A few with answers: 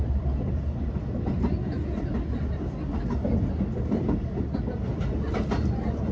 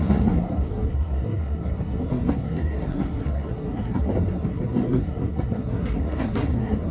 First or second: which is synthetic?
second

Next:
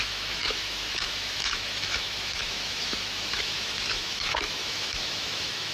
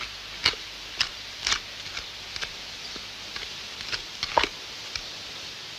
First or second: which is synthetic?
first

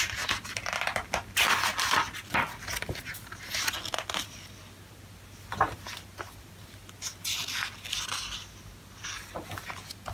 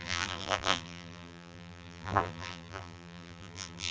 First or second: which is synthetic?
second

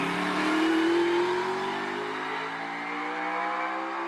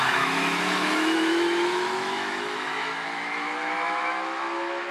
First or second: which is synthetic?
second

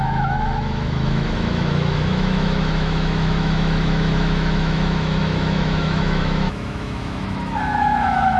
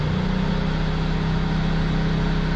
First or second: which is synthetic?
first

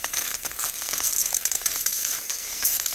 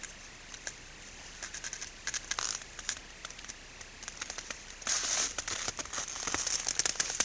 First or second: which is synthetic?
first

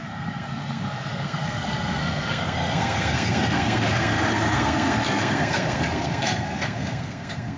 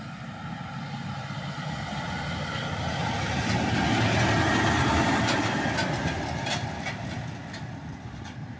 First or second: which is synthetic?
first